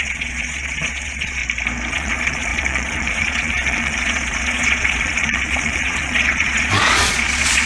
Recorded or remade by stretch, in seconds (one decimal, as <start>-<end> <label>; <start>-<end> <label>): 0.0-1.4 remade; 1.4-1.9 recorded; 1.9-7.7 remade